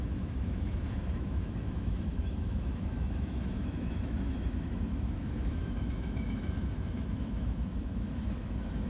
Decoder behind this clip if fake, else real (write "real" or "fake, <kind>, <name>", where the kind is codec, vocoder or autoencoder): fake, autoencoder, DAC-VAE